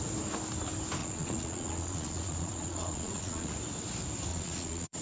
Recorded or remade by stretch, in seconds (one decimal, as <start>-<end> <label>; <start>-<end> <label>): 0.0-1.0 recorded; 1.0-3.5 remade; 3.5-4.3 recorded; 4.3-5.0 remade